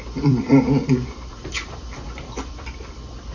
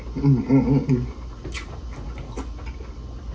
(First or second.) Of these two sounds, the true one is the second